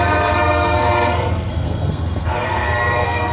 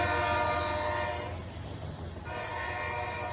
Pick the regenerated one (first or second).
first